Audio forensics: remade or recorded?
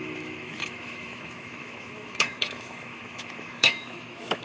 remade